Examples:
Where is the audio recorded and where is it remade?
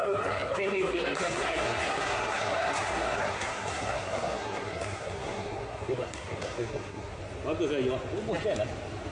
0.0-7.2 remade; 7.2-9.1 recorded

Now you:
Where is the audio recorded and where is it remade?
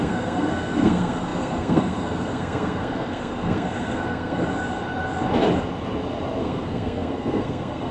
0.0-4.4 remade; 4.4-6.4 recorded; 6.4-7.9 remade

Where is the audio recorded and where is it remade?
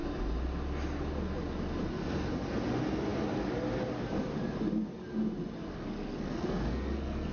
0.0-5.7 recorded; 5.7-7.3 remade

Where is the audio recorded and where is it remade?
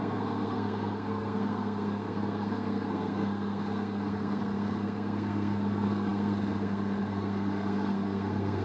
0.0-8.6 remade